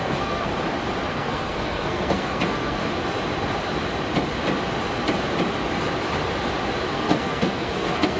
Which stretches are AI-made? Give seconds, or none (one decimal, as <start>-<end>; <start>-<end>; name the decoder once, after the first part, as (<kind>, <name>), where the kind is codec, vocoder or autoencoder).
0.0-0.5 (codec, SNAC); 1.1-2.8; 6.9-8.2